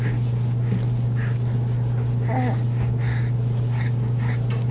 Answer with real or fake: real